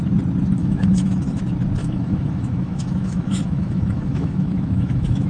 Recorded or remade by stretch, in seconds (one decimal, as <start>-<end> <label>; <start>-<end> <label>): 0.0-0.6 recorded; 0.6-1.4 remade; 1.4-1.8 recorded; 1.8-5.3 remade